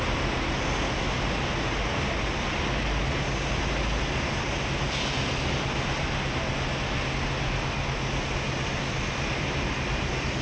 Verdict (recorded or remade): recorded